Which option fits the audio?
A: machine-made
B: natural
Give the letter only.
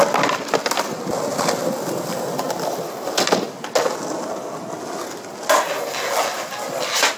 B